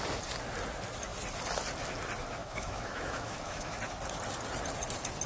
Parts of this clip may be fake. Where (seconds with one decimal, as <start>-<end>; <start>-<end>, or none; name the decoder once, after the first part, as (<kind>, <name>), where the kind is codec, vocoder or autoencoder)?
2.4-3.8 (autoencoder, DAC-VAE)